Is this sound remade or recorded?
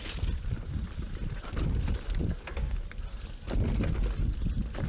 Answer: recorded